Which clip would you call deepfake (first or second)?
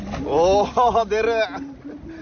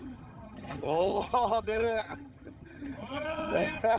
second